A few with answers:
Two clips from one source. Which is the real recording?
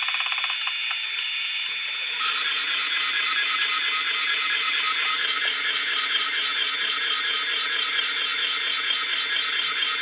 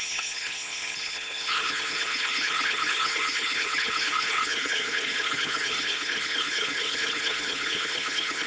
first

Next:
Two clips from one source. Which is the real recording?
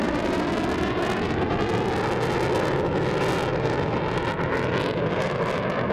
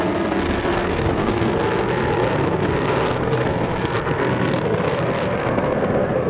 first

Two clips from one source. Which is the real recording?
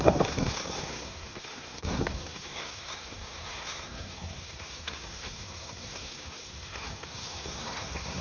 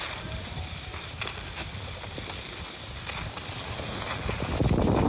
second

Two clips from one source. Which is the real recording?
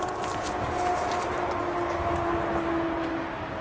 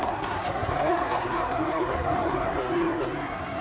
first